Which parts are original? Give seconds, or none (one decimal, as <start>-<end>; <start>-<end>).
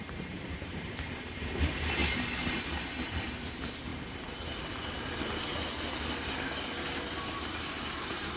3.9-4.9; 5.5-7.1